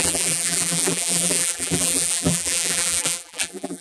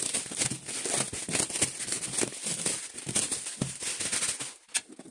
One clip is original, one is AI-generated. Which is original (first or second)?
second